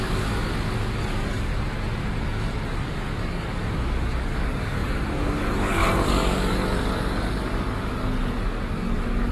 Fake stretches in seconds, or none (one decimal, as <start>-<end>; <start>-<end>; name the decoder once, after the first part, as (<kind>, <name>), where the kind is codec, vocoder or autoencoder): 0.0-0.5 (codec, DAC); 1.0-1.5; 2.2-9.3